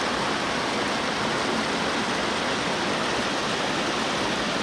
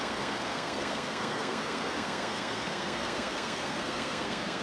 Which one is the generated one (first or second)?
second